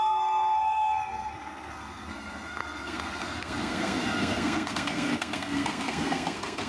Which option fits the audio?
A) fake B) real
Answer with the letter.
A